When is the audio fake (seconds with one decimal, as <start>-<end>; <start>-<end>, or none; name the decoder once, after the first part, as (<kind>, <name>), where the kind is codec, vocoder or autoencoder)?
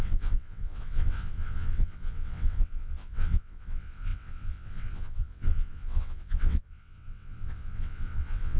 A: 0.0-8.6 (vocoder, WaveNeXt)